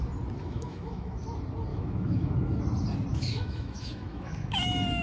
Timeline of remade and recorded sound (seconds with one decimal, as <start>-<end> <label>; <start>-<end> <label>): 0.0-0.4 recorded; 0.4-1.2 remade; 1.2-1.7 recorded; 1.7-2.6 remade; 2.6-3.1 recorded; 3.1-5.0 remade